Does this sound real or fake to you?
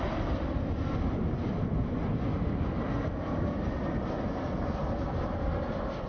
real